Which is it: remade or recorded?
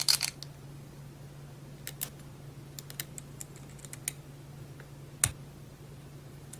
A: recorded